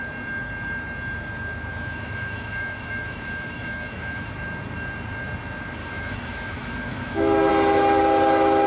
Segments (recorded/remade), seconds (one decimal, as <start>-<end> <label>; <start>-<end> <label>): 0.0-1.7 recorded; 1.7-4.3 remade; 4.3-5.8 recorded; 5.8-7.5 remade; 7.5-8.7 recorded